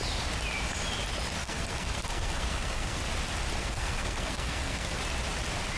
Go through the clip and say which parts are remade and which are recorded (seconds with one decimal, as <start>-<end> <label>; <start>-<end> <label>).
0.0-1.4 recorded; 1.4-3.0 remade; 3.0-3.6 recorded; 3.6-5.0 remade; 5.0-5.8 recorded